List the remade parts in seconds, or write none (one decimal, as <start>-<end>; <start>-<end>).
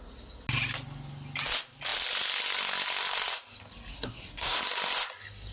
3.9-4.6